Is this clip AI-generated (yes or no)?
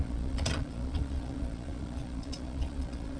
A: yes